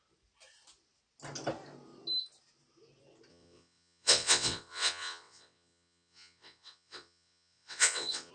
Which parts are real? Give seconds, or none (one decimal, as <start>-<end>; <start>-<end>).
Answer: 0.0-3.3

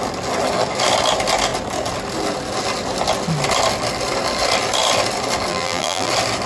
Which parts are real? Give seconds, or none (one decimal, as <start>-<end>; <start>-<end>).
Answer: 0.0-5.5; 6.1-6.5

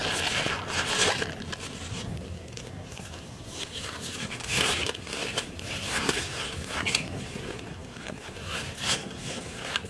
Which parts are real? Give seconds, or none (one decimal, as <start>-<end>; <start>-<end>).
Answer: 0.0-1.9

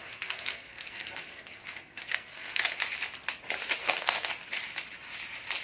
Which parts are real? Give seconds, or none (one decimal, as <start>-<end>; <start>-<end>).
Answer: 2.7-3.8; 4.3-5.6